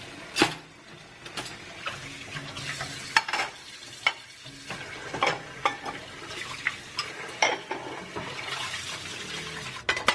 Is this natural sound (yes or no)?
yes